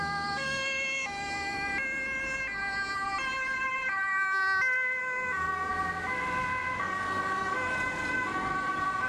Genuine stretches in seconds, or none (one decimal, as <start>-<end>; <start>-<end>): 1.7-5.0; 5.7-6.8